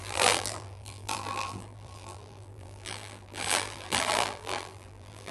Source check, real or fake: fake